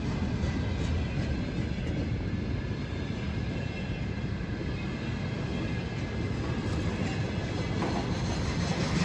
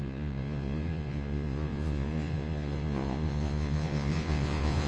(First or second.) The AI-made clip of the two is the second